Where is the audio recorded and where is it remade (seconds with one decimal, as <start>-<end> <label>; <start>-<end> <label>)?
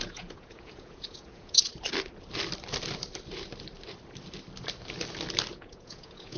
0.0-1.7 remade; 1.7-5.5 recorded; 5.5-6.4 remade